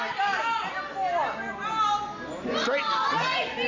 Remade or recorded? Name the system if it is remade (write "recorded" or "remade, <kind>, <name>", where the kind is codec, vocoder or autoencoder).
recorded